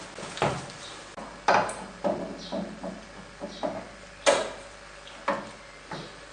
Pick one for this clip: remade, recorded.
recorded